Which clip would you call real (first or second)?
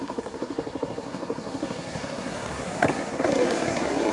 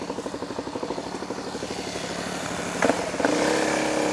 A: second